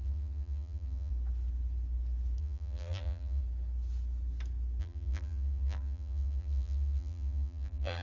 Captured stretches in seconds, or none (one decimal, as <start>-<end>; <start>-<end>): 1.1-2.4; 3.4-4.8